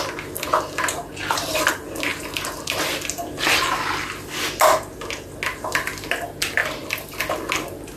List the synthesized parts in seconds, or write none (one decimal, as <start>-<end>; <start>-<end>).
none